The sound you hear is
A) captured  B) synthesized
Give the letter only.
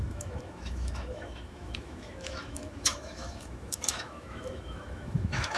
B